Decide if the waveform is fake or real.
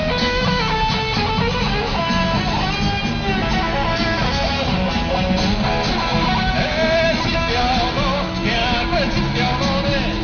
real